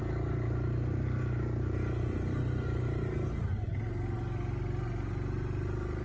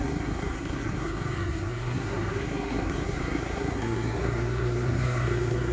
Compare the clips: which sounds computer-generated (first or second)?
second